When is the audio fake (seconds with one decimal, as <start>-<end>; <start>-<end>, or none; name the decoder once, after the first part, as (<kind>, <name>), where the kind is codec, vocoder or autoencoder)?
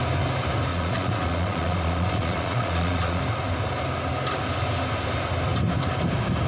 0.7-3.2 (vocoder, Vocos)